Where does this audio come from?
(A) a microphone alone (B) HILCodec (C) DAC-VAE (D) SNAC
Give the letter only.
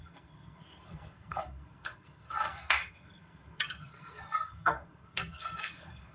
D